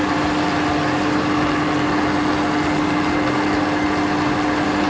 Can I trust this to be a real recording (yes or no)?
yes